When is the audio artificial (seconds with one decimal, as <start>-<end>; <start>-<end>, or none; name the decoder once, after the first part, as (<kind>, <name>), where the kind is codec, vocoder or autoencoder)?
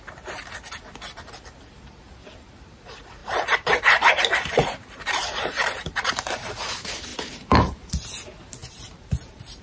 3.2-6.5 (vocoder, BigVGAN v2); 7.1-7.9; 8.6-9.6